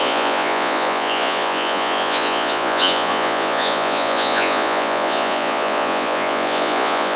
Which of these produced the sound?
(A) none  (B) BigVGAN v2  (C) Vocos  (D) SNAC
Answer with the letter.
C